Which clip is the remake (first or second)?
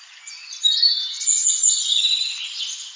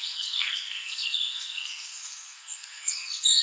second